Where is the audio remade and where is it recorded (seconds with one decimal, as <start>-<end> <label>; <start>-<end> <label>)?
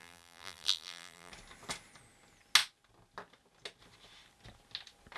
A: 0.0-1.3 remade; 1.3-5.2 recorded